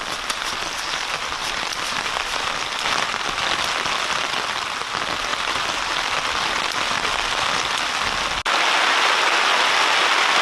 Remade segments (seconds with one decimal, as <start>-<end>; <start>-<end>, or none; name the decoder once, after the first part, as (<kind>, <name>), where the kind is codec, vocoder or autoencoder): 1.4-3.2 (vocoder, BigVGAN v2); 5.3-6.4